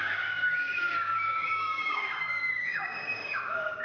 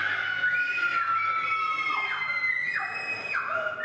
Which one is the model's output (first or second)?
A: first